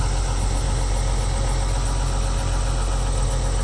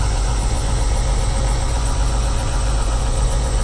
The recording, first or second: first